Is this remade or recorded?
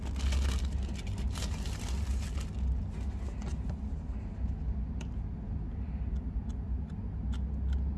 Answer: recorded